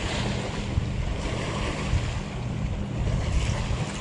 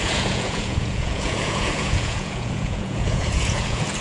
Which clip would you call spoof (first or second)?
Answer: second